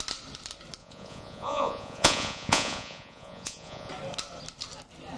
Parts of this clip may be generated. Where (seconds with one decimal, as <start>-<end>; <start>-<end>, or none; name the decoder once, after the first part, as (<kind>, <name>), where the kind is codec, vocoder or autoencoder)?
0.8-3.9 (vocoder, Vocos)